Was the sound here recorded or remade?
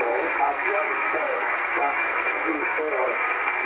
remade